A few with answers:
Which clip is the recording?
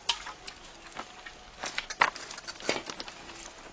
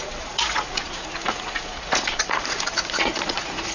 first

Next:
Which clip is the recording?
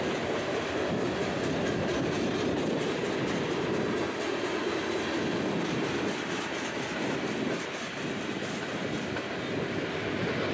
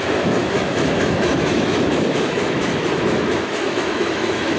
first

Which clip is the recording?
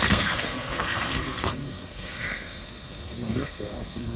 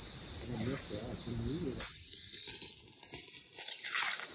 second